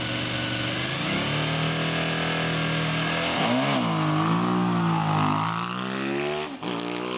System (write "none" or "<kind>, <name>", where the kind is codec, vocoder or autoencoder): none